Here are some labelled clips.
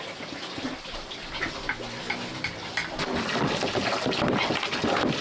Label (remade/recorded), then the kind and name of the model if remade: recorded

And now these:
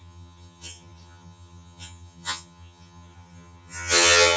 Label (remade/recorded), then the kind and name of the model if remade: remade, vocoder, HiFi-GAN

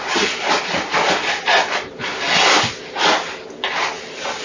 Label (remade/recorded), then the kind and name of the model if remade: recorded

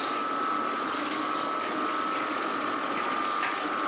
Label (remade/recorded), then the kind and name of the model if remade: recorded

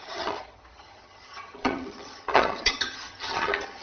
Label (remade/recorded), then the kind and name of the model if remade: remade, vocoder, HiFi-GAN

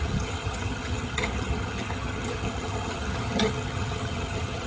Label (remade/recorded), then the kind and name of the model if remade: remade, vocoder, HiFi-GAN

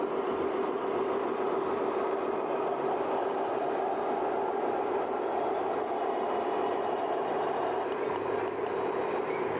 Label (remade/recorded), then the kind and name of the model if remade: recorded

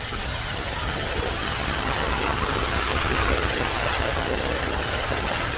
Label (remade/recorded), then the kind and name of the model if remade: remade, vocoder, HiFi-GAN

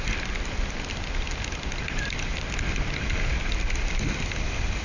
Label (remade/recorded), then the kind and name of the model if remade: recorded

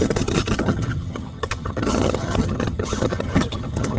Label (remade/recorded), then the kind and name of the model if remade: remade, vocoder, HiFi-GAN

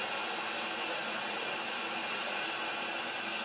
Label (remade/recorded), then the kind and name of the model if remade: recorded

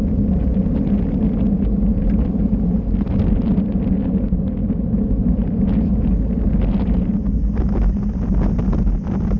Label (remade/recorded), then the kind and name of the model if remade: recorded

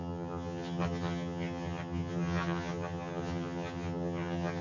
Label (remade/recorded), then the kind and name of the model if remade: remade, vocoder, HiFi-GAN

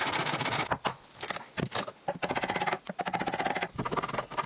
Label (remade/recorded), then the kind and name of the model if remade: recorded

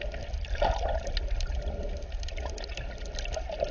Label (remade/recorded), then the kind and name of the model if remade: recorded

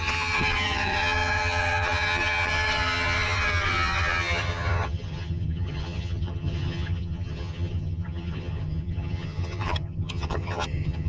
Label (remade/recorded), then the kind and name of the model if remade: remade, vocoder, HiFi-GAN